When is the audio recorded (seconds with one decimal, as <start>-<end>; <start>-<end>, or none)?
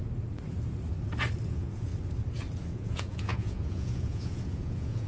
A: 0.0-1.5; 1.9-2.6